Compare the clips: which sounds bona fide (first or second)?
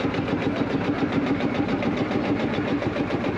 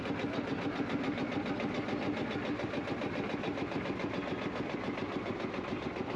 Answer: second